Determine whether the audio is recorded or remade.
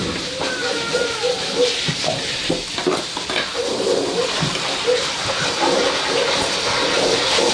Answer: recorded